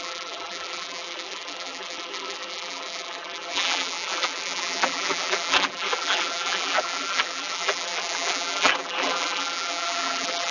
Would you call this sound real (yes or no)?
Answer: no